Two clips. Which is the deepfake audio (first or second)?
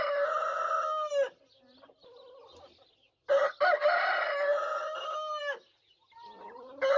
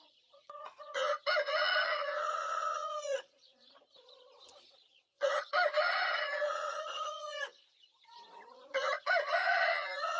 second